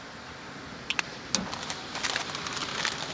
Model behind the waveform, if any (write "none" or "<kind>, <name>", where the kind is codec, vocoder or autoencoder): none